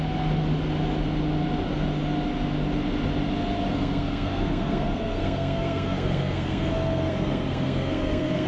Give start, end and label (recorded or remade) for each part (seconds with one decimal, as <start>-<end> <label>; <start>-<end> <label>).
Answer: 0.0-3.7 recorded; 3.7-8.5 remade